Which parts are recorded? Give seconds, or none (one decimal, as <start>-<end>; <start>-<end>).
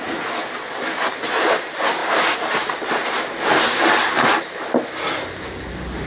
0.0-2.0; 4.9-6.1